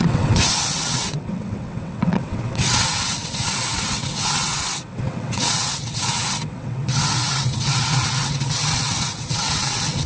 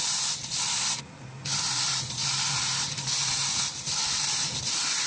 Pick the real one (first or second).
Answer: second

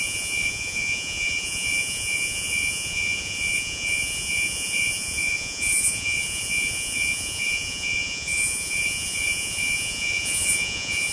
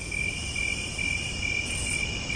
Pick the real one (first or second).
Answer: second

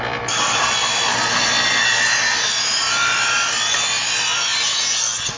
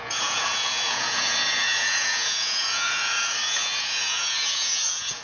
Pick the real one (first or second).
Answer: first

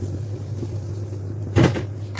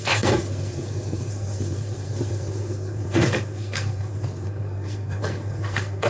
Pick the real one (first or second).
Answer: first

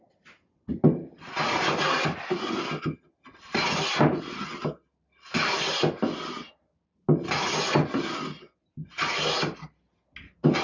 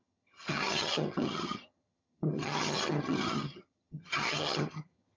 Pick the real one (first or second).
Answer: first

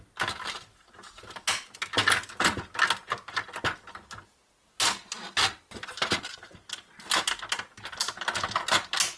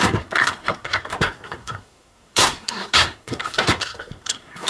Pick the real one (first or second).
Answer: first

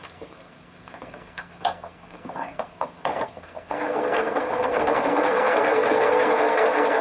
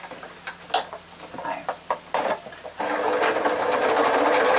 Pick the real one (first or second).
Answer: second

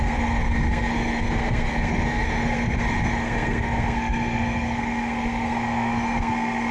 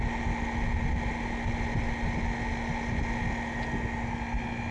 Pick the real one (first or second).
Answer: second